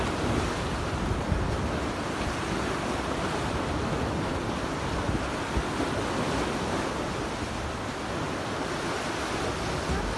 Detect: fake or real real